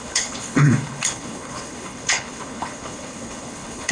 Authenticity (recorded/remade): remade